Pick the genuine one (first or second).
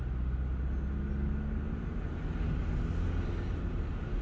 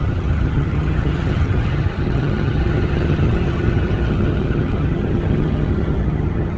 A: first